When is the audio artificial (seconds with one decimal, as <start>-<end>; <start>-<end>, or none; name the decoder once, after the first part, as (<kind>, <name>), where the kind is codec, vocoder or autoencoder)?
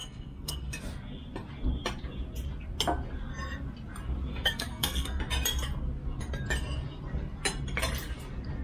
0.0-0.8 (codec, SNAC); 4.3-5.2